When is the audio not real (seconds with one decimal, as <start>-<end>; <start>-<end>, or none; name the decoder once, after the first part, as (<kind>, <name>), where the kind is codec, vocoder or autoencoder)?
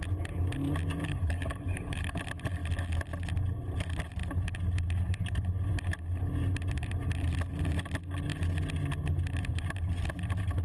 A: 1.0-2.2 (codec, DAC)